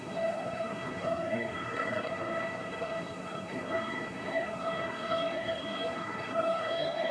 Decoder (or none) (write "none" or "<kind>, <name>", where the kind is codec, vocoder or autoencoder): codec, SNAC